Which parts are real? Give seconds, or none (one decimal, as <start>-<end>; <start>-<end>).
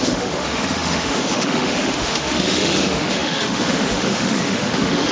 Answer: none